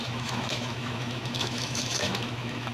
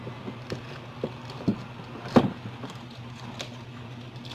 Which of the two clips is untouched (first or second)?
second